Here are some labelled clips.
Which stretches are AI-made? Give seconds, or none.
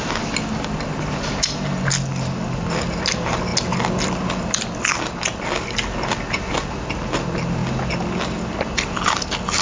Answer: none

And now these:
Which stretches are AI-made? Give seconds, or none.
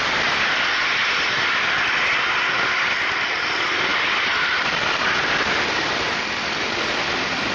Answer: none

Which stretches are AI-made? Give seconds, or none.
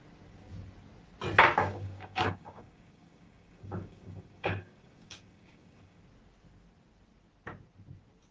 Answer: 1.6-6.0 (codec, DAC)